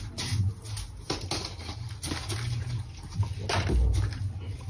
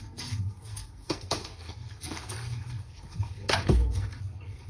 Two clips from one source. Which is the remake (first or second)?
second